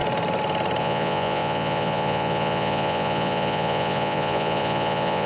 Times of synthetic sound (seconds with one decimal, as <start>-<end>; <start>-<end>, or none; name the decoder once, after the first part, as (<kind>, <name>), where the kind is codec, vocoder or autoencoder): 0.8-5.3 (vocoder, Vocos)